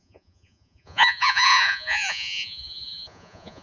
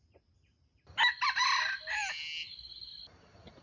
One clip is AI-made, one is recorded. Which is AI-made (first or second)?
first